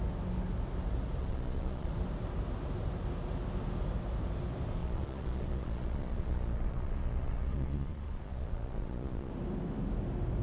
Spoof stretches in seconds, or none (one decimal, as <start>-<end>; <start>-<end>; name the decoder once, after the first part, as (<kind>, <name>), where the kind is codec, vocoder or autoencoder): 1.2-1.9 (vocoder, Vocos); 4.8-9.3